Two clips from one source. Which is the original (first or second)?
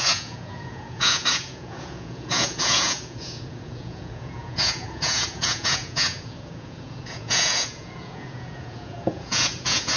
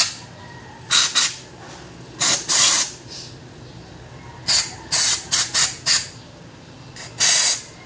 second